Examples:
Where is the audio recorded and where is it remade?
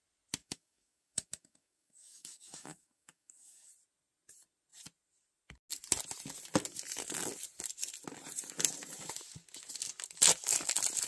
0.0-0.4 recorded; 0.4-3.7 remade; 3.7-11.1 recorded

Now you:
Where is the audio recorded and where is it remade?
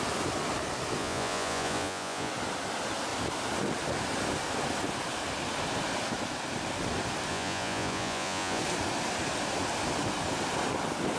0.0-1.0 recorded; 1.0-2.3 remade; 2.3-7.3 recorded; 7.3-8.6 remade; 8.6-11.2 recorded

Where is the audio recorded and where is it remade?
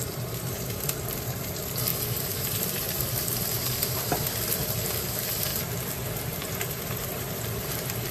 0.0-1.9 remade; 1.9-2.4 recorded; 2.4-5.5 remade; 5.5-6.7 recorded; 6.7-8.1 remade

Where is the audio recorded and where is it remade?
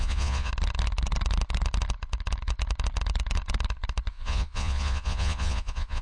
0.0-0.5 remade; 0.5-4.1 recorded; 4.1-6.0 remade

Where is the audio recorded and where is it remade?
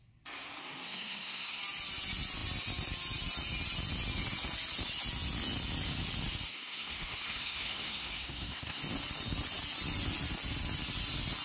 0.0-0.6 recorded; 0.6-1.6 remade; 1.6-6.5 recorded; 6.5-8.8 remade; 8.8-11.4 recorded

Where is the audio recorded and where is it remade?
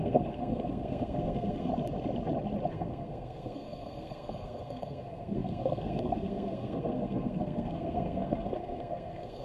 0.0-1.7 remade; 1.7-2.7 recorded; 2.7-9.4 remade